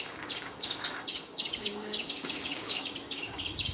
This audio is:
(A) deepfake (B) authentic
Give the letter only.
A